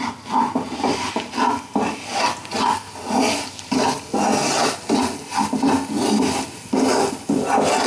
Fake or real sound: real